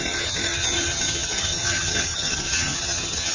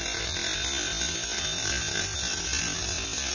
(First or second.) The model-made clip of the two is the first